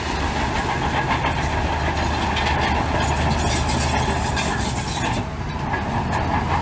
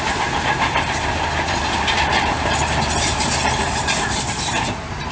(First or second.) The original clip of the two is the first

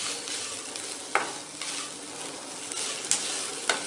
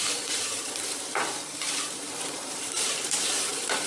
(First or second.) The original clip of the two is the first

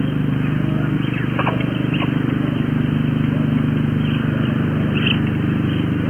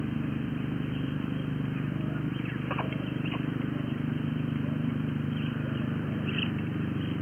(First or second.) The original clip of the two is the first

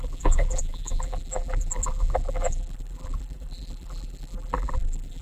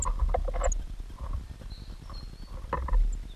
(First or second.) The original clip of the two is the second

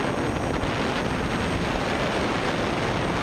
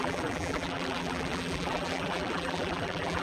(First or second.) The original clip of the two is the first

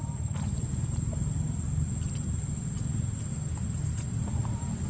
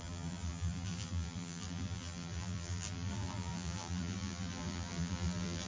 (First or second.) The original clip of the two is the first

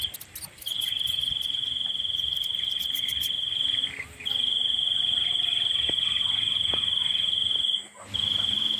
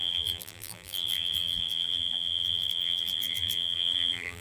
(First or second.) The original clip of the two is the first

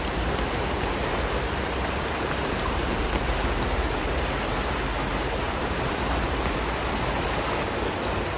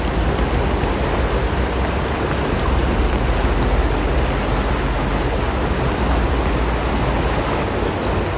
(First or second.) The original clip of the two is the second